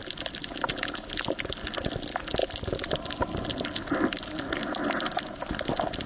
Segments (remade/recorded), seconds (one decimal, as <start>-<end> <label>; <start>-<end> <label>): 0.0-6.1 recorded